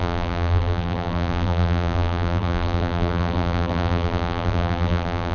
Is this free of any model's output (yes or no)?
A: no